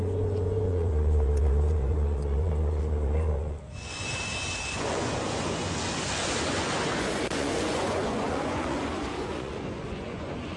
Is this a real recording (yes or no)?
no